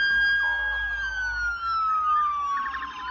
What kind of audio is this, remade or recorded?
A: recorded